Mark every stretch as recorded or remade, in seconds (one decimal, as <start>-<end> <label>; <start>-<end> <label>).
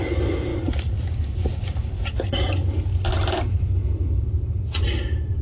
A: 0.0-5.4 recorded